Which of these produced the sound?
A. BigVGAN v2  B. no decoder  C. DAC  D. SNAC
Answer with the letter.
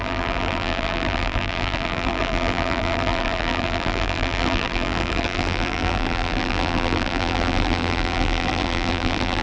A